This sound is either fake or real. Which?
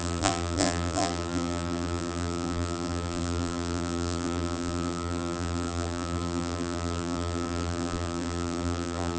fake